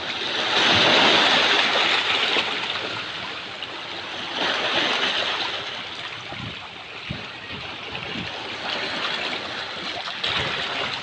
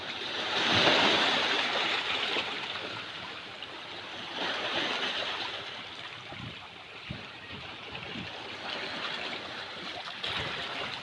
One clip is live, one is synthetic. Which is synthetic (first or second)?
second